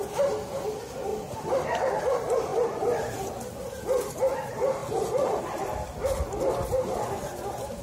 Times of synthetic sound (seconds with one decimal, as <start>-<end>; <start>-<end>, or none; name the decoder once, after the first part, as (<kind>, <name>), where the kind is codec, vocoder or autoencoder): 1.1-2.0 (vocoder, BigVGAN v2); 4.8-5.4